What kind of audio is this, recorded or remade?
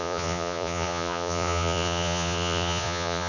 remade